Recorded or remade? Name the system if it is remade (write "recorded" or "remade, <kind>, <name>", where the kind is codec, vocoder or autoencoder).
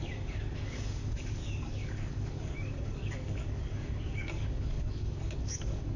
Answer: remade, codec, DAC